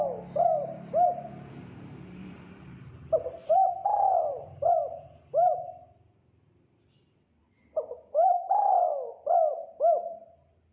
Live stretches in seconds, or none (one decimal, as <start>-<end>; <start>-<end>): 0.0-0.5; 1.6-2.2; 3.5-4.1; 4.8-10.7

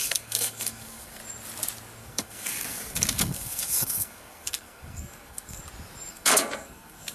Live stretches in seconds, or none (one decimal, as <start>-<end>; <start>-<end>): 1.2-2.0; 5.6-6.1

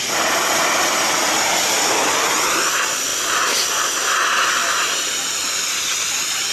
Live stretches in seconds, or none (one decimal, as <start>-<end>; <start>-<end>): 0.0-6.5

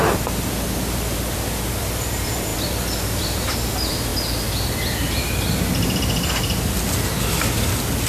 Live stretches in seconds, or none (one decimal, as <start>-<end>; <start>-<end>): 4.1-8.1

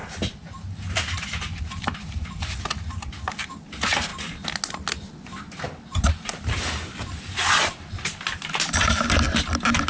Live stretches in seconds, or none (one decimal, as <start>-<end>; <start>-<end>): 0.0-9.9

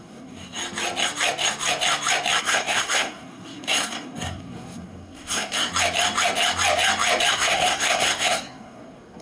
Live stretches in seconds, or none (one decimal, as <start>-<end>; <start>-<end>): 0.6-2.4; 5.7-7.3